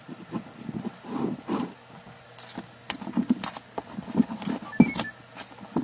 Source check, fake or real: real